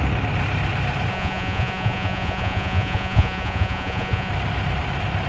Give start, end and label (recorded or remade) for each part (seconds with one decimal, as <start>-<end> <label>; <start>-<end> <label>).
0.0-1.1 recorded; 1.1-4.3 remade; 4.3-5.3 recorded